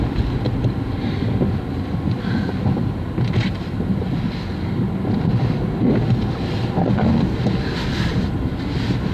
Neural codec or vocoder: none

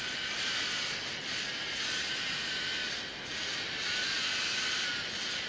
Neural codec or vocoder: none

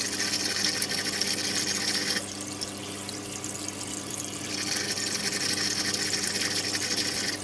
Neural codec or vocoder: none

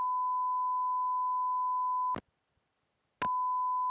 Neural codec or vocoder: none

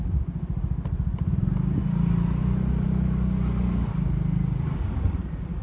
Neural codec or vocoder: none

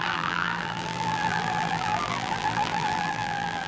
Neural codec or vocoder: vocoder, BigVGAN v2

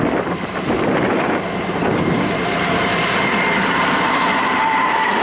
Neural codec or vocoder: vocoder, BigVGAN v2